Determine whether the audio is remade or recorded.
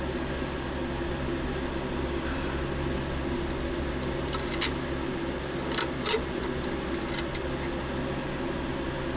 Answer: recorded